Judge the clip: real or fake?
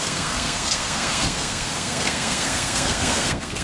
fake